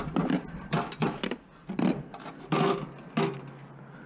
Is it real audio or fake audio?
real